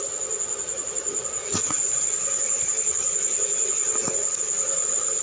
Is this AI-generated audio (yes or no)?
no